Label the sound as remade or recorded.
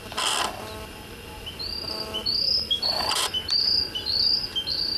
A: recorded